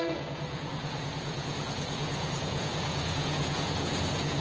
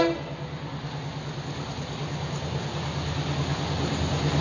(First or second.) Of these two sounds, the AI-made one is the first